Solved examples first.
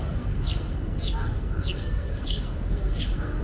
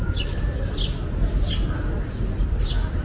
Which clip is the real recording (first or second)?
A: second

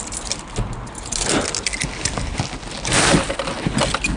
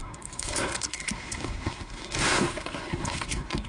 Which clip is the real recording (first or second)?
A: first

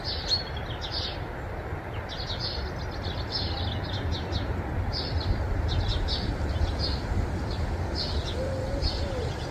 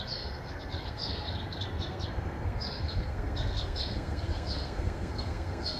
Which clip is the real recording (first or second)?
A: first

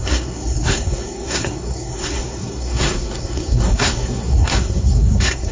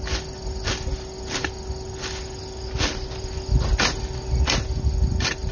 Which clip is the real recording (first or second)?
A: second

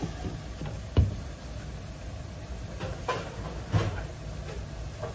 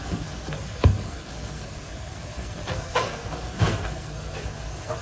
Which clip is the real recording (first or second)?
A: first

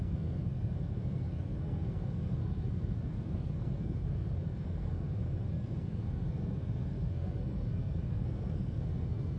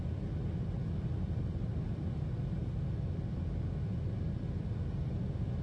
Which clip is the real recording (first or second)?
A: second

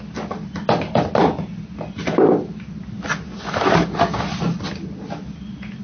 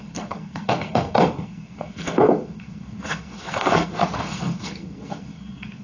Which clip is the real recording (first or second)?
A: first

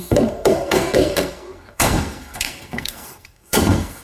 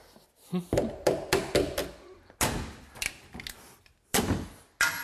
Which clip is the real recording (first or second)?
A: second